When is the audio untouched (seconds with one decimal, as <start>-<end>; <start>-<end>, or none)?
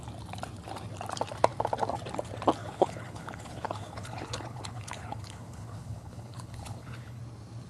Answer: 0.0-2.6; 7.2-7.7